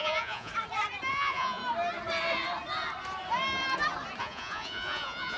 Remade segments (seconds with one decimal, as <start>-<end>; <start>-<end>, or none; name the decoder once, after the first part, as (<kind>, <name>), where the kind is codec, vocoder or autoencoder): 0.0-0.5 (vocoder, Vocos); 1.1-1.6; 4.2-5.4